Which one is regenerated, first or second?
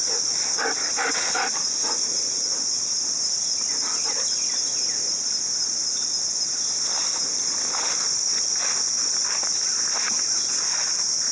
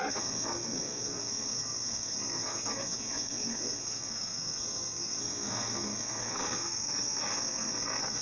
second